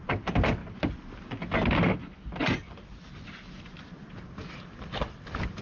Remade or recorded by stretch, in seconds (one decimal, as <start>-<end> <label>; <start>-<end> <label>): 0.0-5.6 recorded